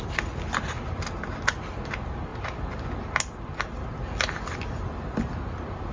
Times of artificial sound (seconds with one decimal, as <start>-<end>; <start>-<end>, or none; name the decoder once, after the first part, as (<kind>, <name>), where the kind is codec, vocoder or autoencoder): none